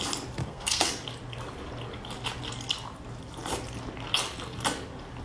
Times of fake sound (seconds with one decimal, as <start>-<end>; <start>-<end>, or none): 0.4-0.9